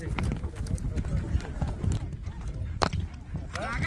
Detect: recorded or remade recorded